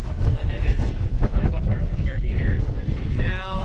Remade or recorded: remade